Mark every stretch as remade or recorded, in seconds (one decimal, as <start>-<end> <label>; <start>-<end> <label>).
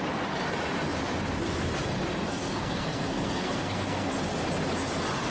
0.0-2.3 recorded; 2.3-4.1 remade; 4.1-5.3 recorded